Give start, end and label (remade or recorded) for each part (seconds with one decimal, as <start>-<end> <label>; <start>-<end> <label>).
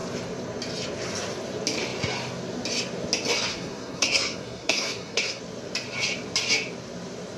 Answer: 0.0-3.5 recorded; 3.5-5.4 remade; 5.4-7.4 recorded